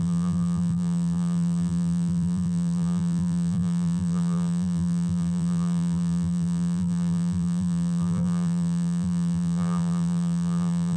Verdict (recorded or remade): remade